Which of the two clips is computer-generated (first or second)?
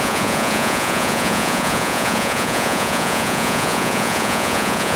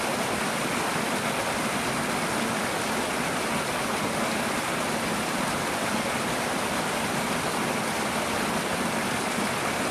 first